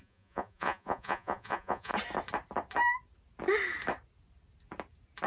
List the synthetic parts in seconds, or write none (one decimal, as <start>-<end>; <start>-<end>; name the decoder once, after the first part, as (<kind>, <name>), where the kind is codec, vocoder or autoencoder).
0.0-1.9 (vocoder, Vocos)